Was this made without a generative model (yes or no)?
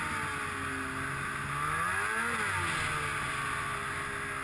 yes